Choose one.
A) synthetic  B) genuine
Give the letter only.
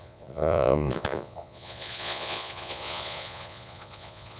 A